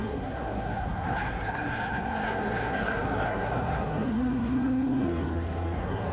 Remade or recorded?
remade